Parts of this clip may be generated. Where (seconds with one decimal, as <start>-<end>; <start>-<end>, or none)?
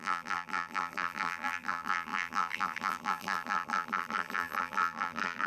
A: 0.0-5.5